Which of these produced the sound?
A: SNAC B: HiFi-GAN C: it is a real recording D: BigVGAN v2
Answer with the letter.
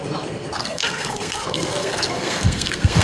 A